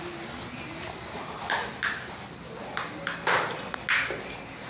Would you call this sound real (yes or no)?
yes